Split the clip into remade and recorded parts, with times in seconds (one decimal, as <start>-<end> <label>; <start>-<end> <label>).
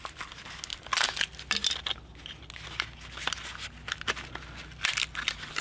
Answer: 0.0-5.6 recorded